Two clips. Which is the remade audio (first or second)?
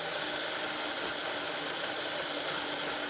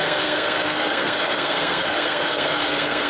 second